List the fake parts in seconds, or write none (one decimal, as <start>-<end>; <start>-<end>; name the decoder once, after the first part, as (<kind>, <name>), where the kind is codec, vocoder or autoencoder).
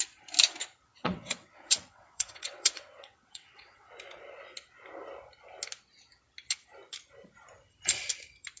0.9-3.9 (vocoder, WaveNeXt)